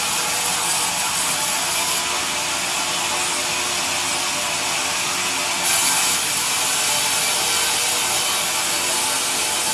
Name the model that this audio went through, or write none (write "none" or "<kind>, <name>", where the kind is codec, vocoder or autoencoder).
none